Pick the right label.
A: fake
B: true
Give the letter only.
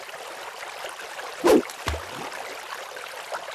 B